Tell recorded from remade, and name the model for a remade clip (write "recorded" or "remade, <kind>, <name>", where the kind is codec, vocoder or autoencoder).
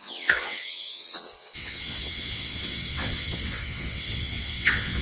remade, vocoder, WaveNeXt